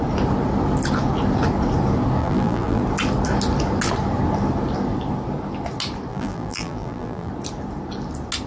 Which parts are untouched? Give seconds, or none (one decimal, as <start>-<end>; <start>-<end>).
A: 0.0-2.2; 2.8-6.1; 7.3-8.5

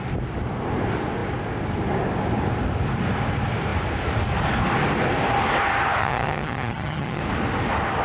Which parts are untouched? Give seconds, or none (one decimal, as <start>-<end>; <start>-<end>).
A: 0.0-6.0; 7.2-8.0

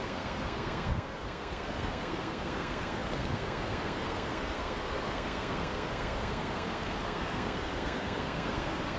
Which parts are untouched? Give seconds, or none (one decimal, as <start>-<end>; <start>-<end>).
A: none

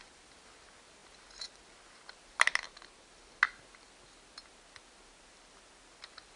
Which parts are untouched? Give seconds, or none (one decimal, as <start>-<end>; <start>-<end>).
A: 0.0-6.4